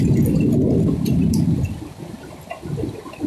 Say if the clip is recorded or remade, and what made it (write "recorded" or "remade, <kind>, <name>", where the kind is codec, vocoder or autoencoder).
recorded